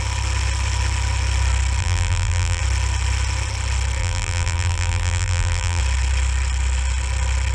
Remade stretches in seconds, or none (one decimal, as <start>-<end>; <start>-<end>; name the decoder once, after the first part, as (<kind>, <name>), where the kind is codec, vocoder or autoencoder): 1.8-2.6 (vocoder, BigVGAN v2); 4.0-5.8